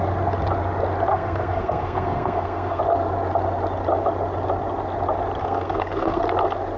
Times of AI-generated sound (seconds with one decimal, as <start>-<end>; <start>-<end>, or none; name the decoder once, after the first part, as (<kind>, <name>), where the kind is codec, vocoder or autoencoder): 1.1-2.8 (codec, SNAC); 5.4-6.2